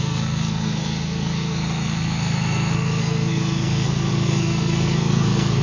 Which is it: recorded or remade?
remade